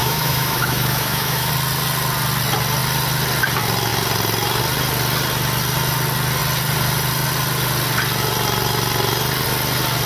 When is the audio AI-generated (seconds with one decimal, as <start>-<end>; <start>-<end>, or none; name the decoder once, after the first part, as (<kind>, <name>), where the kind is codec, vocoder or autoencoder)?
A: 0.0-1.5 (autoencoder, DAC-VAE)